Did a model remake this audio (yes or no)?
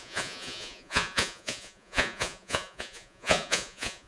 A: yes